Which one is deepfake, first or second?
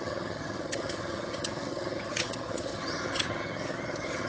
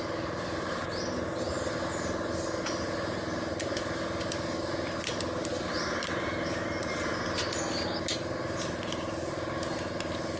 first